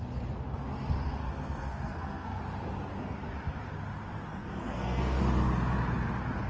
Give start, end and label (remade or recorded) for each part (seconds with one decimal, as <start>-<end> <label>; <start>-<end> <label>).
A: 0.0-1.2 recorded; 1.2-2.4 remade; 2.4-4.4 recorded; 4.4-5.2 remade; 5.2-6.5 recorded